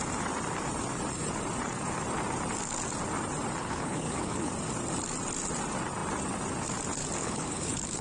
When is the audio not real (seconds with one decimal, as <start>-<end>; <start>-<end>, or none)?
3.6-4.5; 7.2-8.0